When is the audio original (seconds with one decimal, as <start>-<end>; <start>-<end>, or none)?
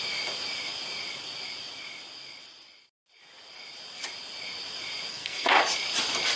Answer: 0.0-5.1; 5.6-6.4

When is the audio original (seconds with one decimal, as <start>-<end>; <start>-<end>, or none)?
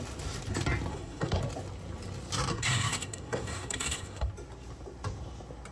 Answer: 0.0-0.9; 1.4-2.5; 4.3-5.7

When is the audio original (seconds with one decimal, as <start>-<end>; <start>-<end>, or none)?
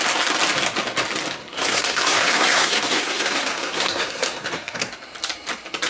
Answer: 0.0-1.4; 4.9-5.9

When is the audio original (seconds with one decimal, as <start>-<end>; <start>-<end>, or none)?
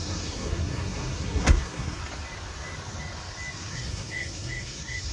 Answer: 2.0-3.7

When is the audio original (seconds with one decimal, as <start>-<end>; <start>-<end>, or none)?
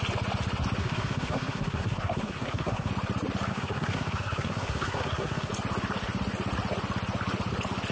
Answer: 0.0-0.8; 2.9-3.5; 5.5-7.9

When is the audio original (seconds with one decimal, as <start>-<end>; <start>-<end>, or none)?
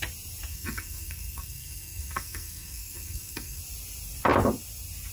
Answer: 0.0-0.5; 3.6-5.1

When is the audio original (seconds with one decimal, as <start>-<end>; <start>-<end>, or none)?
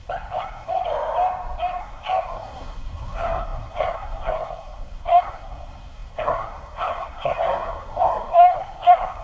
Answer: 0.8-1.8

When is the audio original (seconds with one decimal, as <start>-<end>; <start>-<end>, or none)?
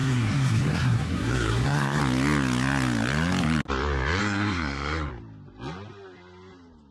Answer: 2.0-4.2; 5.1-6.9